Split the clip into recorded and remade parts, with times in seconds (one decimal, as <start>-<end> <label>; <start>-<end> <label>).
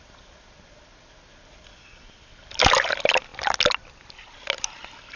0.0-5.2 recorded